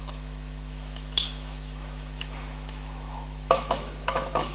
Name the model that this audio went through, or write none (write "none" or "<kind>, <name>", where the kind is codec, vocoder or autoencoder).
autoencoder, DAC-VAE